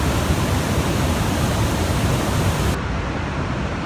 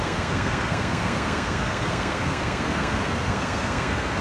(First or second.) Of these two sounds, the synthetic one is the second